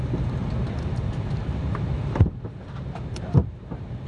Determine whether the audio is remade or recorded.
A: remade